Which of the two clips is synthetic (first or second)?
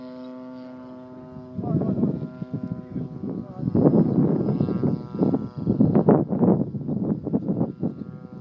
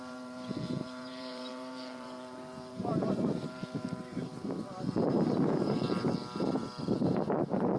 second